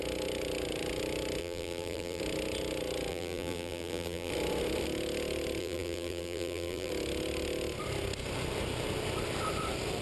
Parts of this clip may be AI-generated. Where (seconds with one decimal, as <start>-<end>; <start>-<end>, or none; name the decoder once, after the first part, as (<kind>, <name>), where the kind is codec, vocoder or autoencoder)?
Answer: 1.4-2.2 (vocoder, BigVGAN v2); 3.1-4.3; 5.6-6.9

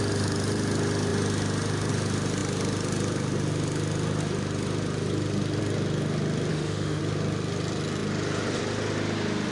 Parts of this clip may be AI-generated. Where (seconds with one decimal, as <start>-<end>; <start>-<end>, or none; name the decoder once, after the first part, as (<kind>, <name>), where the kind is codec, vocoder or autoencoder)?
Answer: 6.5-7.0 (autoencoder, DAC-VAE)

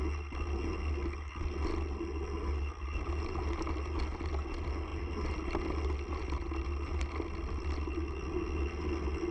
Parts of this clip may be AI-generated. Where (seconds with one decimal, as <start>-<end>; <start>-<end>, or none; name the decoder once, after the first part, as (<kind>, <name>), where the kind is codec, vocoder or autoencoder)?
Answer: 4.9-5.4 (vocoder, BigVGAN v2)

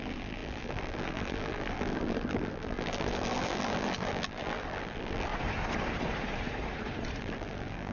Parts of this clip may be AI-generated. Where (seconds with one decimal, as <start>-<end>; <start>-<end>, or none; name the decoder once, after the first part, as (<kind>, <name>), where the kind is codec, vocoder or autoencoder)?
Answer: 0.0-5.3 (vocoder, BigVGAN v2); 7.2-7.9

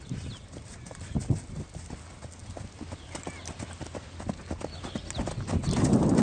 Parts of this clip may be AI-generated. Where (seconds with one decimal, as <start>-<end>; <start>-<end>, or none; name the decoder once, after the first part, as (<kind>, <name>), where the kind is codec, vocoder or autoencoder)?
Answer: 2.4-4.4 (vocoder, BigVGAN v2)

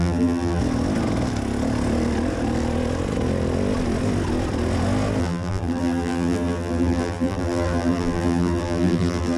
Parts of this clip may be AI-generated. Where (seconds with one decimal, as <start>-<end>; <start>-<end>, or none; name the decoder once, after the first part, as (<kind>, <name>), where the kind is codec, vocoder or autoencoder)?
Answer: 0.0-0.6 (vocoder, BigVGAN v2); 5.2-9.4

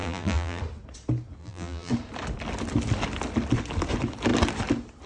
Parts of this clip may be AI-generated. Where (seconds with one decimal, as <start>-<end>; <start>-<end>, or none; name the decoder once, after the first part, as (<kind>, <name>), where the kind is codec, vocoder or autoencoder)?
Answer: 0.0-0.6 (vocoder, BigVGAN v2); 1.4-1.9

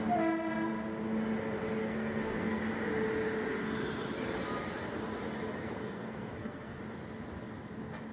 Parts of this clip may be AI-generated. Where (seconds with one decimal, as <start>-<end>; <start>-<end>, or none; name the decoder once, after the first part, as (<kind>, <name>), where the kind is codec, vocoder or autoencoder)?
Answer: 1.8-2.6 (codec, SNAC); 5.6-6.8